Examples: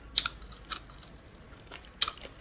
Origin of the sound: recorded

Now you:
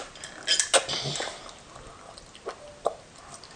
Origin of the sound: recorded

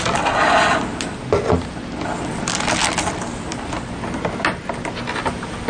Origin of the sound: recorded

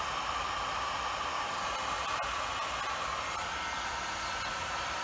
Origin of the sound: recorded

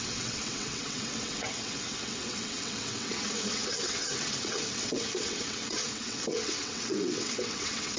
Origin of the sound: remade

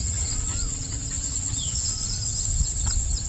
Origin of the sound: remade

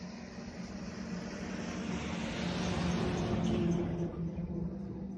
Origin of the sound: recorded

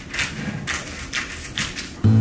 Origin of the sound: recorded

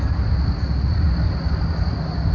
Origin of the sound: recorded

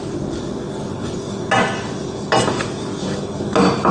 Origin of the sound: recorded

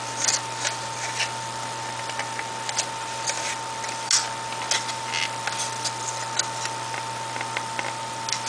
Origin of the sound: recorded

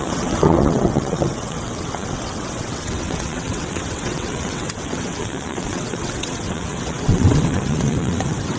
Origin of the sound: remade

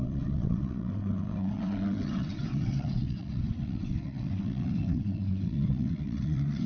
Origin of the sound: remade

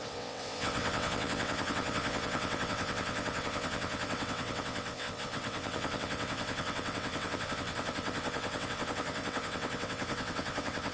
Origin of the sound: remade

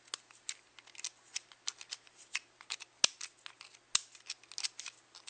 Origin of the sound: recorded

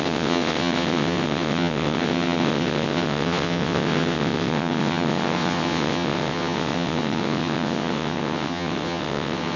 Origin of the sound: remade